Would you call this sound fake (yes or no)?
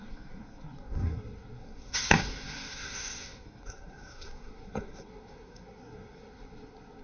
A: yes